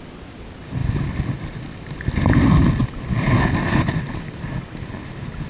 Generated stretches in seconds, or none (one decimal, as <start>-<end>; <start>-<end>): none